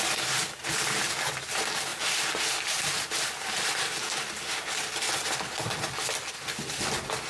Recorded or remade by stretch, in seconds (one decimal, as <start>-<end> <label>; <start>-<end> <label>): 0.0-7.3 recorded